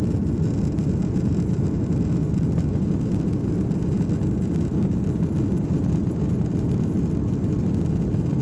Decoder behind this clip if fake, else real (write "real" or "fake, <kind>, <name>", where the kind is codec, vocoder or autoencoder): real